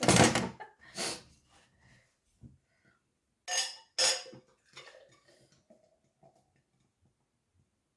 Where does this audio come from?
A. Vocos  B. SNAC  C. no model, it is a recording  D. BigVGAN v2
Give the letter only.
C